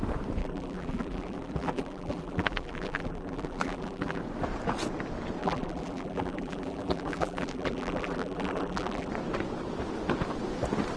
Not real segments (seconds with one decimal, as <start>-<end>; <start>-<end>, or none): 0.4-4.2; 5.4-9.1